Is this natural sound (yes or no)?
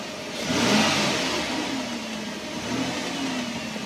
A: yes